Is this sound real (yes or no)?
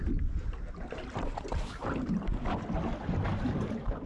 yes